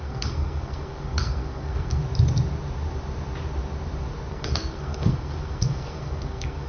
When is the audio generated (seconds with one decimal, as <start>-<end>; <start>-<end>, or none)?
0.0-2.0; 4.3-6.7